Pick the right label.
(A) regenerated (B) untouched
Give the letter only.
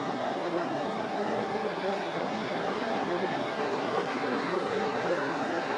A